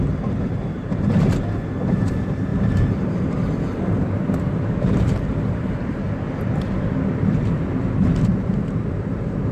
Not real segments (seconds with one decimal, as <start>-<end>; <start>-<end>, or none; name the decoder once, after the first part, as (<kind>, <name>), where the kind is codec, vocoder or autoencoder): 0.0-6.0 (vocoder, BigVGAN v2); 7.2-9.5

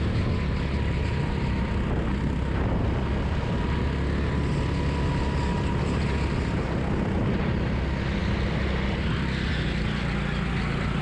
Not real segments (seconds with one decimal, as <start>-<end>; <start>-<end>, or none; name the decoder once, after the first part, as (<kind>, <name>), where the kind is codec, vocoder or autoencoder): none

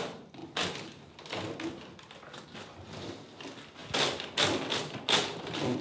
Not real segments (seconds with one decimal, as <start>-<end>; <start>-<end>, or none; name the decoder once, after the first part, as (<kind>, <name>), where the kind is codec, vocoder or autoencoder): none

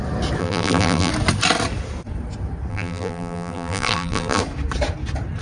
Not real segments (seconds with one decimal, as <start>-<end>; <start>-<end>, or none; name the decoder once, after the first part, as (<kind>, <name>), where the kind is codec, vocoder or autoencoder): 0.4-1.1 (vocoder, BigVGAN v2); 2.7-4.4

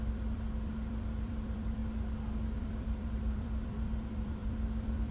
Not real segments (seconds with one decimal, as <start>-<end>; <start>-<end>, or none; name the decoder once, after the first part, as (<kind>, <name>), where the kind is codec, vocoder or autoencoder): 0.0-1.8 (vocoder, BigVGAN v2); 2.6-5.1

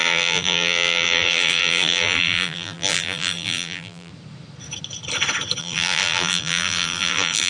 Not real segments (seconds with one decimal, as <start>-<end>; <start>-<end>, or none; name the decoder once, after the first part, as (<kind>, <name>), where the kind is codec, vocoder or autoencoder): 0.0-4.1 (vocoder, BigVGAN v2); 5.6-7.5

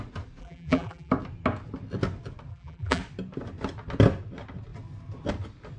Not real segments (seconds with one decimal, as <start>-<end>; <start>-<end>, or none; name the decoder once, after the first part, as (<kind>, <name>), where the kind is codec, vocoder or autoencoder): 0.4-1.1 (vocoder, BigVGAN v2); 2.5-3.0

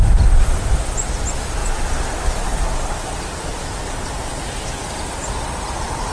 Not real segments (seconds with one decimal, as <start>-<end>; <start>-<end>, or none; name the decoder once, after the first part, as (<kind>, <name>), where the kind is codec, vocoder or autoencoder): 1.6-4.1 (vocoder, BigVGAN v2); 4.8-5.4